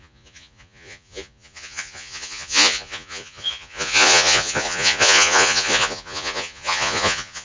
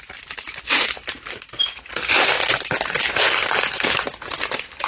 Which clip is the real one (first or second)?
second